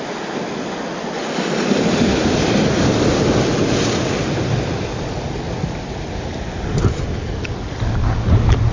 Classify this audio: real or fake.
real